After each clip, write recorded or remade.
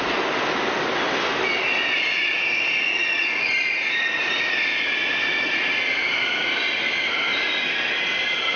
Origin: recorded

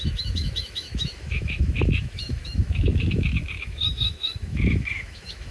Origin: remade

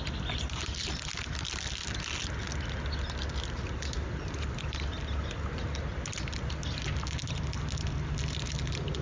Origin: recorded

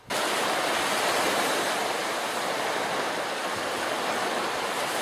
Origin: recorded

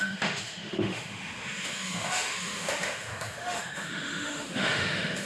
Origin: remade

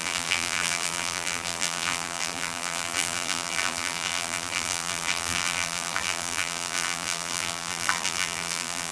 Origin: remade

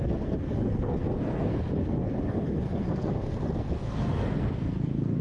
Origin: remade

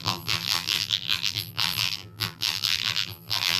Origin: remade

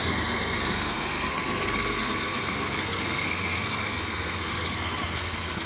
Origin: remade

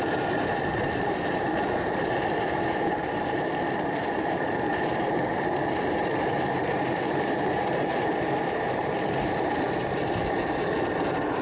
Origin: remade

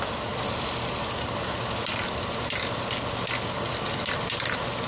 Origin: recorded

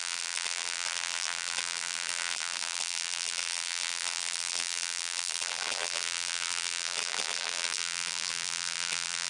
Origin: remade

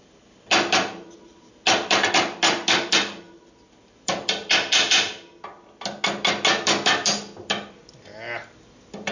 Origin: recorded